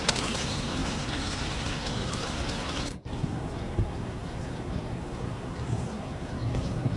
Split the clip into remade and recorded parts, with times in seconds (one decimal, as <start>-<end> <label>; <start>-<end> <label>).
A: 0.0-7.0 remade